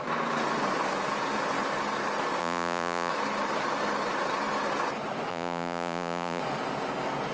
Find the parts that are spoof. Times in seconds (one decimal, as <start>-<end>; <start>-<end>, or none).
2.4-3.1; 5.3-6.4